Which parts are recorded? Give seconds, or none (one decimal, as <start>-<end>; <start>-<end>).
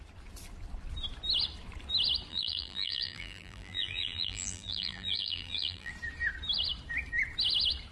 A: 0.0-2.3; 5.9-7.9